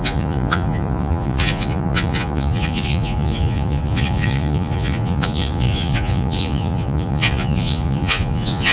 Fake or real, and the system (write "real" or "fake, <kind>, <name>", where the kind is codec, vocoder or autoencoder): fake, vocoder, Vocos